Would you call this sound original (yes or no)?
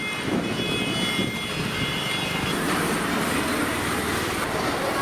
yes